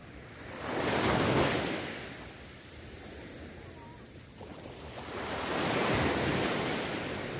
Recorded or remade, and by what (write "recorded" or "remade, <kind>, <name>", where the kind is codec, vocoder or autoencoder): recorded